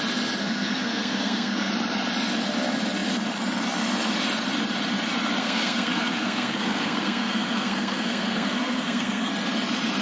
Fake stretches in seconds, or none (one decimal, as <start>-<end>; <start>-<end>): 0.4-1.7; 5.4-9.3